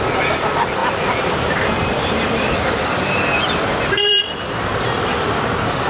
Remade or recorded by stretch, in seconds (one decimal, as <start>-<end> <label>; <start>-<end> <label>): 0.0-0.8 recorded; 0.8-4.2 remade; 4.2-5.9 recorded

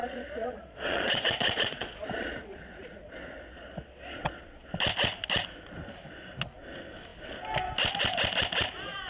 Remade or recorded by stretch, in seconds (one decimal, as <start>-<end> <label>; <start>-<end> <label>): 0.0-4.7 remade; 4.7-9.1 recorded

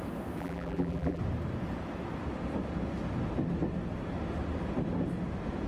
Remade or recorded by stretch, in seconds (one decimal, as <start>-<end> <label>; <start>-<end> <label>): 0.0-0.4 recorded; 0.4-1.2 remade; 1.2-5.7 recorded

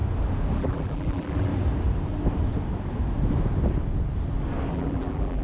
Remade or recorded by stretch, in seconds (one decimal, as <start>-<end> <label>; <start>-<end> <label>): 0.0-0.6 recorded; 0.6-1.5 remade; 1.5-4.7 recorded; 4.7-5.4 remade

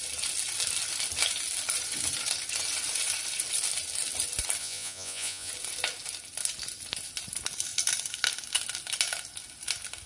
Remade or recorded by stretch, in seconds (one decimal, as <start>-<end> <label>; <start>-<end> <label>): 0.0-4.6 recorded; 4.6-5.5 remade; 5.5-10.1 recorded

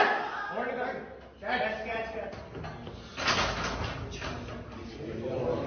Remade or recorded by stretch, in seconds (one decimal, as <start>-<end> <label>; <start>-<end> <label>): 0.0-5.7 recorded